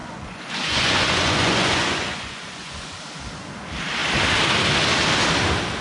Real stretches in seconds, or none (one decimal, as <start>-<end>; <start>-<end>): 2.9-5.8